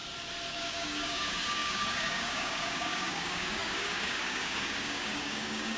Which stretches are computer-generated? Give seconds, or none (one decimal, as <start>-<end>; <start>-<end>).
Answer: 0.5-5.8